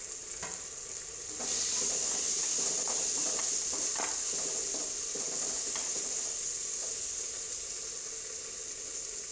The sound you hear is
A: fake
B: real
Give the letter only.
B